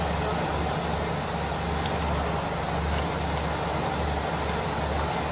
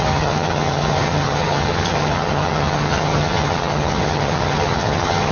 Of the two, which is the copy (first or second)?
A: second